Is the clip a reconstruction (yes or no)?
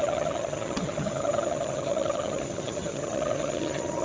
yes